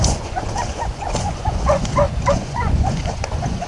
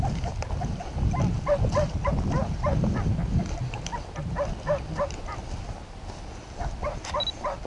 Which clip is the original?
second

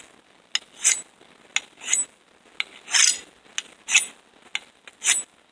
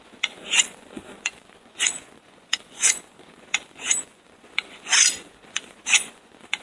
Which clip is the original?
first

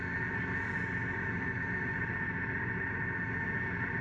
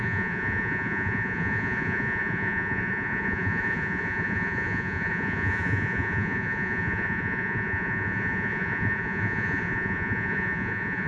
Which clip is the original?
first